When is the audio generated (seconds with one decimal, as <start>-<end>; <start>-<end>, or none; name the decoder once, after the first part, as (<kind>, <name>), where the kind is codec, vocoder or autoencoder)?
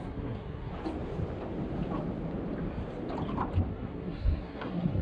0.0-0.7 (codec, SNAC); 3.7-5.0